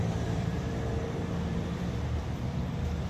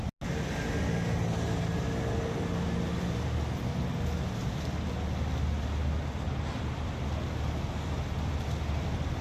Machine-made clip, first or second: first